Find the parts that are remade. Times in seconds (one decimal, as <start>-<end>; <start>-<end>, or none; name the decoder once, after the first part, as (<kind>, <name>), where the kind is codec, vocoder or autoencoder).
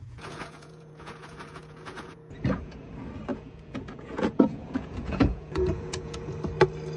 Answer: 0.0-2.9 (vocoder, Vocos); 3.3-6.3